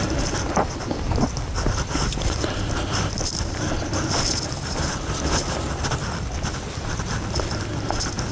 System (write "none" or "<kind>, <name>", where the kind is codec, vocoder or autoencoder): none